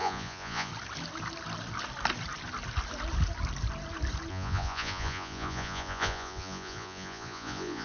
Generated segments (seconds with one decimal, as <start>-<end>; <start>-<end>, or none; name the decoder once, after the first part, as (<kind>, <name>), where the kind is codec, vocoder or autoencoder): 0.0-0.7 (vocoder, Vocos); 4.3-7.8